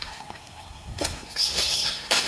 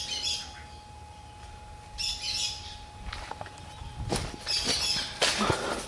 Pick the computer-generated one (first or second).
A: first